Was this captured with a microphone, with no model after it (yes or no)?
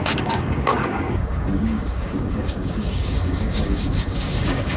no